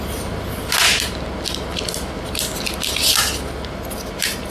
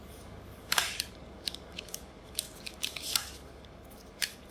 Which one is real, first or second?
first